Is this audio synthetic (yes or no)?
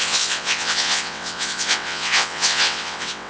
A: yes